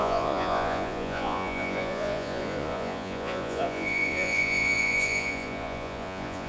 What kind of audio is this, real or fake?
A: fake